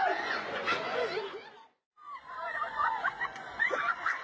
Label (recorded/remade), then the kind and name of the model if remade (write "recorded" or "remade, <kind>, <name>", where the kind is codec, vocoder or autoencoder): remade, vocoder, Vocos